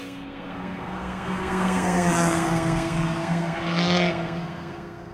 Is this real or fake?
fake